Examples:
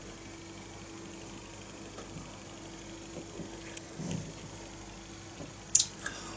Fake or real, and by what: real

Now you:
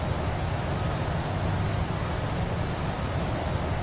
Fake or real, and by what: real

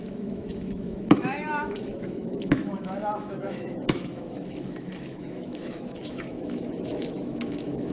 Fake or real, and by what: fake, autoencoder, DAC-VAE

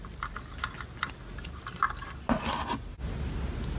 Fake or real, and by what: real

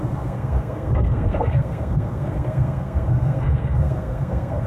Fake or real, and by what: fake, codec, SNAC